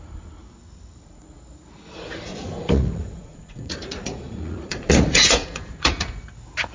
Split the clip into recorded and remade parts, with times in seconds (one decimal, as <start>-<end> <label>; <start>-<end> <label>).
0.0-2.3 recorded; 2.3-6.2 remade; 6.2-6.7 recorded